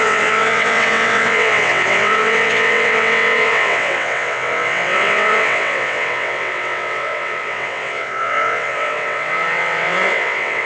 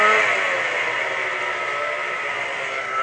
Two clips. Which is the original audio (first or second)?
second